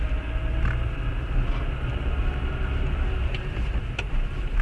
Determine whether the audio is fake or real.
real